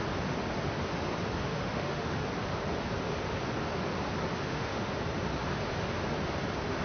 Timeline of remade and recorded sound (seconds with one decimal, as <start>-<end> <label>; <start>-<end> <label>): 0.0-1.5 recorded; 1.5-2.2 remade; 2.2-4.3 recorded; 4.3-4.9 remade; 4.9-6.8 recorded